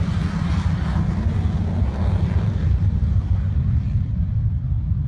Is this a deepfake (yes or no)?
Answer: no